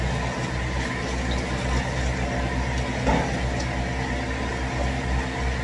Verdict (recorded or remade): recorded